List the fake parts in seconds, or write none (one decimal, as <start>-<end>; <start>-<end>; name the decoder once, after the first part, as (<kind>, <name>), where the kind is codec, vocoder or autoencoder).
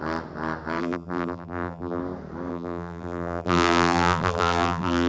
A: 0.8-2.0 (vocoder, BigVGAN v2); 2.5-5.1